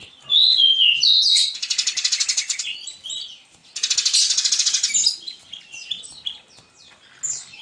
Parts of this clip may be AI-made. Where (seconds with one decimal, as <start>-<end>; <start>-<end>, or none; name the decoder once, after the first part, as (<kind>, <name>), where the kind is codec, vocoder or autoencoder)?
none